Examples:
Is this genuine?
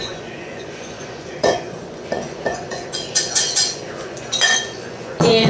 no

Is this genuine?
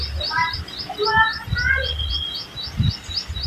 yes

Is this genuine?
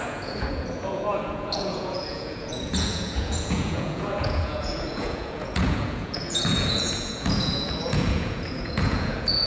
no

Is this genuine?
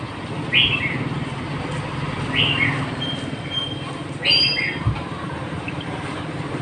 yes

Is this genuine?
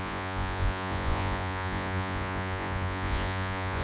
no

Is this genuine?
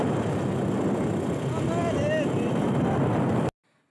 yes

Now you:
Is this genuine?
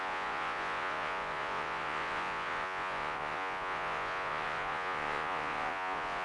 no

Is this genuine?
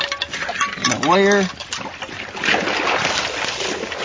yes